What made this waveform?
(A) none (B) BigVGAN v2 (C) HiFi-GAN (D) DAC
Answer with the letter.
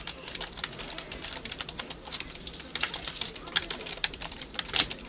B